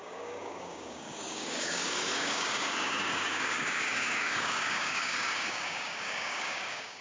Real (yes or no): no